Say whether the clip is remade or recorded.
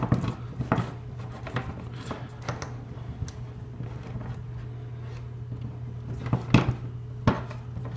recorded